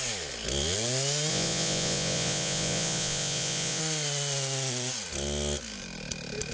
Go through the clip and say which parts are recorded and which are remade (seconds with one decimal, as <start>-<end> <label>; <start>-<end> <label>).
0.0-1.3 recorded; 1.3-3.8 remade; 3.8-6.5 recorded